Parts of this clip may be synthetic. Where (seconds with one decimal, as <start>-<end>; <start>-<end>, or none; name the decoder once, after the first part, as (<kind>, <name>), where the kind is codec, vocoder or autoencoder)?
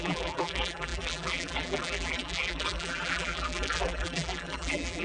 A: 0.0-5.0 (vocoder, BigVGAN v2)